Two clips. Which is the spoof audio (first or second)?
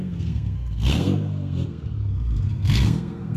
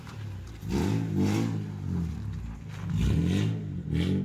first